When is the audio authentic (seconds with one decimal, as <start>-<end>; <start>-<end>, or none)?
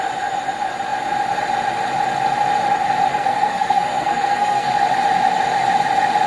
0.0-3.1; 4.7-6.3